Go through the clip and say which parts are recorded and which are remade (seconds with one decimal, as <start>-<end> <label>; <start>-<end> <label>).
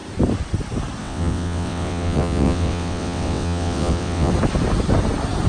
0.0-1.0 recorded; 1.0-4.3 remade; 4.3-5.5 recorded